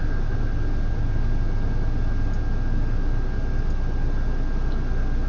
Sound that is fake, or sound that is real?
real